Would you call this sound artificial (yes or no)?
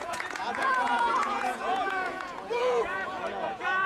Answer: yes